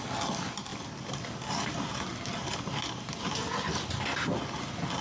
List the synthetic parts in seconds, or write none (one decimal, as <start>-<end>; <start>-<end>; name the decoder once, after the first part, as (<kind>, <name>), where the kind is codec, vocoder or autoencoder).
none